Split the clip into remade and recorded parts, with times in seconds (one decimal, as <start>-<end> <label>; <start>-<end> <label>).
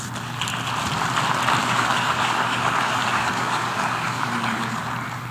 0.0-1.6 recorded; 1.6-4.8 remade; 4.8-5.3 recorded